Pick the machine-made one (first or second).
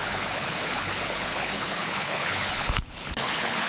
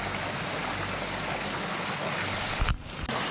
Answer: first